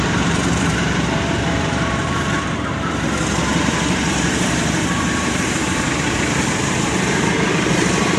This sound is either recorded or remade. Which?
remade